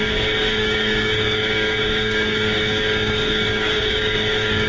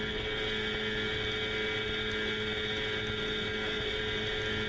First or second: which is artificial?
first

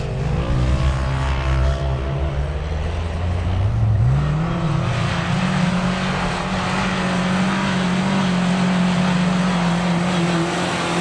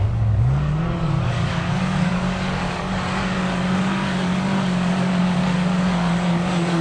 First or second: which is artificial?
second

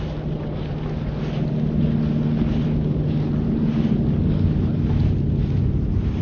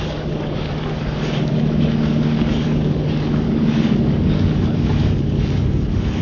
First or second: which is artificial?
second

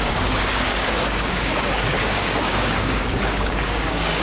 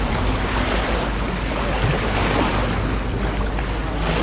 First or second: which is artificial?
first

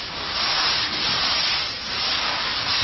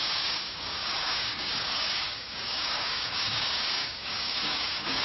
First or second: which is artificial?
second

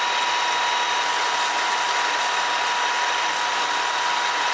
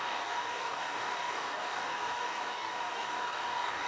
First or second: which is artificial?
second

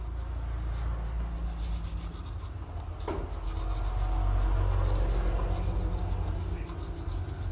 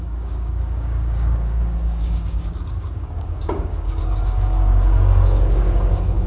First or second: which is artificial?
second